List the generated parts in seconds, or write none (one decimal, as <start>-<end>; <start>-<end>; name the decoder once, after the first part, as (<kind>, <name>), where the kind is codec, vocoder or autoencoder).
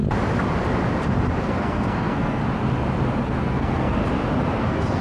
1.4-2.4 (codec, SNAC); 3.4-4.0; 4.6-5.0